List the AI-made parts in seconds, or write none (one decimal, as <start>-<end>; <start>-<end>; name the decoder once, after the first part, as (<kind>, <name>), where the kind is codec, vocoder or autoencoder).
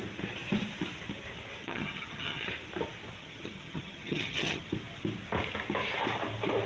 1.6-2.5 (vocoder, HiFi-GAN); 3.2-4.7